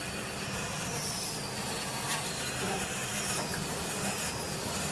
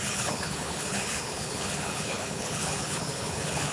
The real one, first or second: first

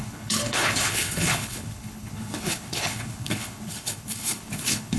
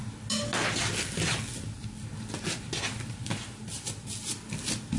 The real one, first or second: second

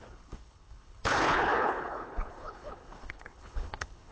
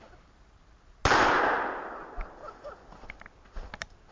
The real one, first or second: second